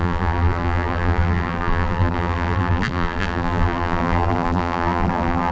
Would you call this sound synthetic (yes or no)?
yes